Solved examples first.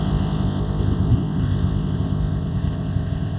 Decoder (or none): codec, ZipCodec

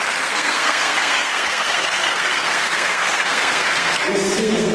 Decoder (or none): codec, SNAC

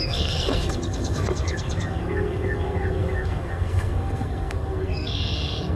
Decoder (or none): codec, SNAC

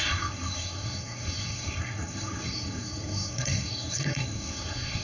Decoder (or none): codec, SNAC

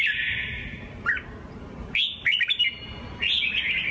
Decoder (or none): none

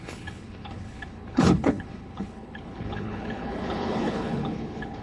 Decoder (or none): codec, HILCodec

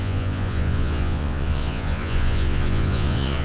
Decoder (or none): vocoder, Vocos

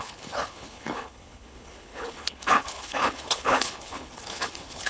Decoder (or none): codec, HILCodec